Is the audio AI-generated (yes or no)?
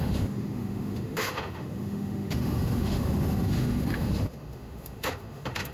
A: yes